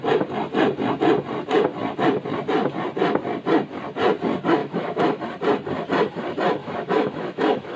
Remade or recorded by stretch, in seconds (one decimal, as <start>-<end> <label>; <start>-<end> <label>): 0.0-4.6 recorded; 4.6-5.2 remade; 5.2-6.6 recorded; 6.6-7.8 remade